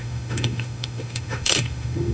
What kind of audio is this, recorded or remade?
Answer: remade